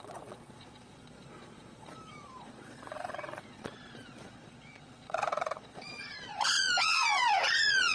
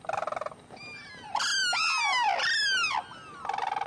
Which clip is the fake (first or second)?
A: first